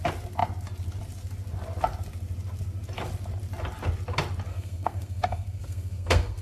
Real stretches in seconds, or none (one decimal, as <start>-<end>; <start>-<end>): 0.0-4.5